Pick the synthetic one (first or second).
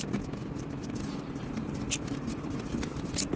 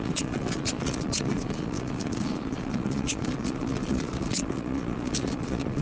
second